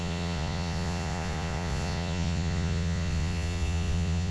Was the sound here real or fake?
fake